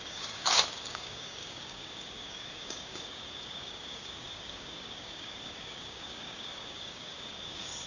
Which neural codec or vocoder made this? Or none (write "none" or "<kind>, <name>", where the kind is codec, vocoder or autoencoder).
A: codec, DAC